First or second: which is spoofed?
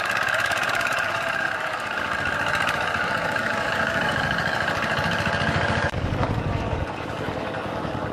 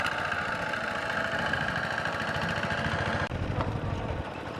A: first